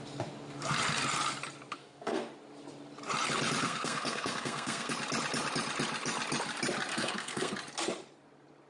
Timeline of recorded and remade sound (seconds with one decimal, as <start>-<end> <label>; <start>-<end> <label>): 0.0-1.8 recorded; 1.8-2.3 remade; 2.3-3.6 recorded; 3.6-4.9 remade; 4.9-6.9 recorded; 6.9-7.5 remade; 7.5-8.7 recorded